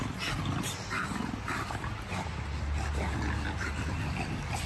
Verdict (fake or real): real